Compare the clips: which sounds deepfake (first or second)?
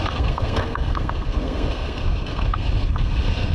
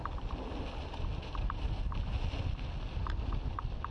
first